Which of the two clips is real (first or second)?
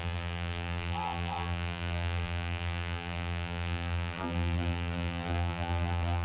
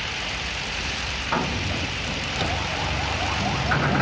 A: second